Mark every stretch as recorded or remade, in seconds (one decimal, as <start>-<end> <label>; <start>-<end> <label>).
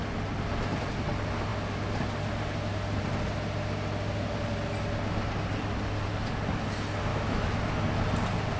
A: 0.0-7.1 recorded; 7.1-7.6 remade; 7.6-8.6 recorded